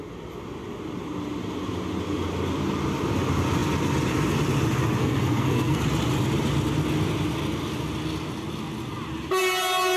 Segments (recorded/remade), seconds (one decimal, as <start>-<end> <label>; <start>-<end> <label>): 0.0-5.0 recorded; 5.0-5.8 remade; 5.8-10.0 recorded